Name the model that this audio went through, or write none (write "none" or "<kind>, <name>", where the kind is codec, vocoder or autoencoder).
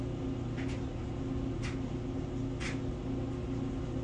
none